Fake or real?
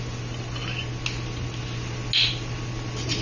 real